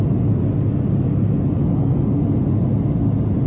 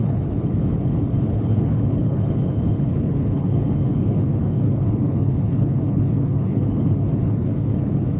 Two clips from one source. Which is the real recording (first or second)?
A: first